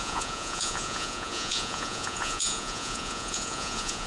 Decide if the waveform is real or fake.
fake